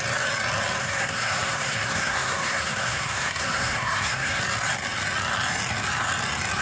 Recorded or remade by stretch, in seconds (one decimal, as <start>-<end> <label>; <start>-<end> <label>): 0.0-0.8 recorded; 0.8-4.4 remade; 4.4-6.6 recorded